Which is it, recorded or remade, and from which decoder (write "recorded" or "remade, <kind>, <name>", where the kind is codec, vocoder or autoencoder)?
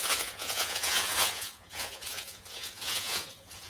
remade, vocoder, Vocos